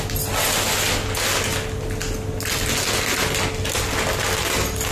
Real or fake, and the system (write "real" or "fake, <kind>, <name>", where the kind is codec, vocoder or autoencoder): real